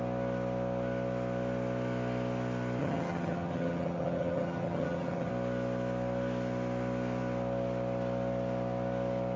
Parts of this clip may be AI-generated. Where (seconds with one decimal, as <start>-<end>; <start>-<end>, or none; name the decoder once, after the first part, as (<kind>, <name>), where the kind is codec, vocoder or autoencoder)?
2.8-5.3 (vocoder, HiFi-GAN)